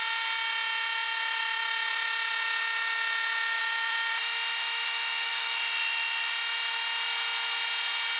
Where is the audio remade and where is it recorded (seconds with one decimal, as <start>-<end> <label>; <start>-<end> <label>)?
0.0-1.0 recorded; 1.0-2.3 remade; 2.3-3.6 recorded; 3.6-4.2 remade; 4.2-5.3 recorded; 5.3-6.3 remade; 6.3-8.2 recorded